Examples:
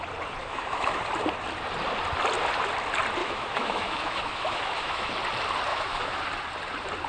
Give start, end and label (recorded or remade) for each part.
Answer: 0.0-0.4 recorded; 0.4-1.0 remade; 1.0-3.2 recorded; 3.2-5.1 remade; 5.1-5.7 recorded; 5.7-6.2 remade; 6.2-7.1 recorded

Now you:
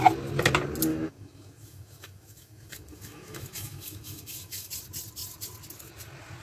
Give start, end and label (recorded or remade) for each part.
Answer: 0.0-0.9 recorded; 0.9-4.7 remade; 4.7-6.4 recorded

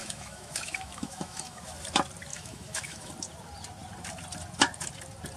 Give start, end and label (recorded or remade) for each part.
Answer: 0.0-1.6 remade; 1.6-2.3 recorded; 2.3-3.1 remade; 3.1-5.4 recorded

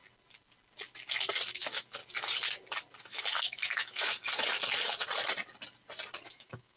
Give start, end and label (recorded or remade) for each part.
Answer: 0.0-1.5 recorded; 1.5-2.0 remade; 2.0-3.0 recorded; 3.0-4.1 remade; 4.1-6.3 recorded; 6.3-6.8 remade

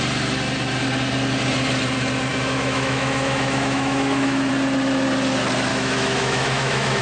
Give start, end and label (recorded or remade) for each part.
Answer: 0.0-2.3 recorded; 2.3-4.5 remade; 4.5-5.7 recorded; 5.7-7.0 remade

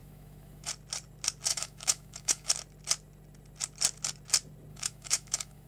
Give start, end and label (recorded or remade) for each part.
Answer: 0.0-0.7 remade; 0.7-1.5 recorded; 1.5-2.5 remade; 2.5-4.7 recorded; 4.7-5.7 remade